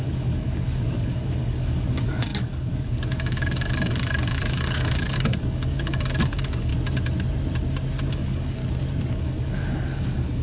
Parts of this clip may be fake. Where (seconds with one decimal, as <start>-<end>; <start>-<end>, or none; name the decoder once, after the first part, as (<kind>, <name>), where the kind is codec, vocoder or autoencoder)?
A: 0.0-6.7 (codec, DAC); 8.1-8.6; 9.1-10.4